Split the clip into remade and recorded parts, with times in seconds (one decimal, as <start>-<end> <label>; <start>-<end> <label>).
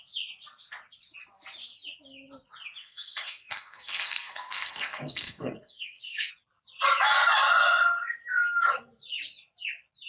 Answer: 0.0-2.8 recorded; 2.8-6.3 remade; 6.3-10.1 recorded